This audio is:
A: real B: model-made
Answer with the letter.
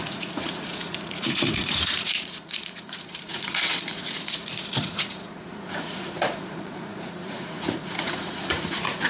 B